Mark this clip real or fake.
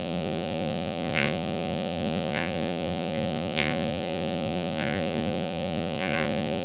fake